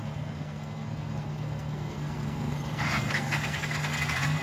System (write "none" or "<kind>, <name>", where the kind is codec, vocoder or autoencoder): codec, SNAC